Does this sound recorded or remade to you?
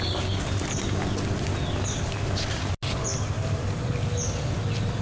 recorded